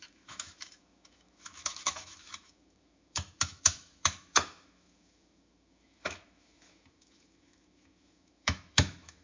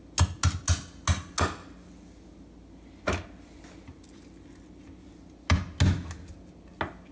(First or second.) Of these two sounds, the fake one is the first